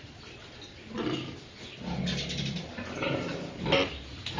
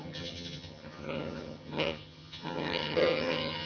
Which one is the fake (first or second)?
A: second